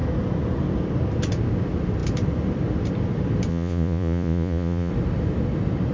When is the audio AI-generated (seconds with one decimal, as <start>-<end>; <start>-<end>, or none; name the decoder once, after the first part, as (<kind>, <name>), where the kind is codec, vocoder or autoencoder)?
3.5-4.9 (vocoder, Vocos)